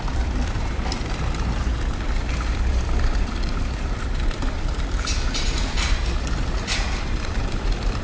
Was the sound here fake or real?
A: fake